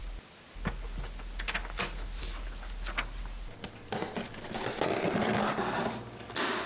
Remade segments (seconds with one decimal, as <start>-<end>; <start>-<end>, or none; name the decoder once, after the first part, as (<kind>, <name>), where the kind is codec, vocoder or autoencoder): none

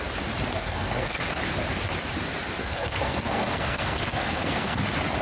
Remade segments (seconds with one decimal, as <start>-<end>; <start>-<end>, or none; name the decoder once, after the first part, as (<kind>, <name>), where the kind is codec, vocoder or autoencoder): 0.6-1.4 (codec, SNAC); 2.6-4.8

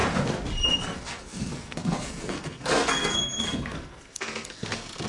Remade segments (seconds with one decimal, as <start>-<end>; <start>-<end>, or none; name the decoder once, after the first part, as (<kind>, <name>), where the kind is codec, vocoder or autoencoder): 0.8-5.1 (codec, SNAC)